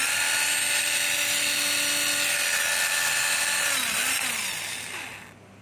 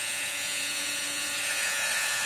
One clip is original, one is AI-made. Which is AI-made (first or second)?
second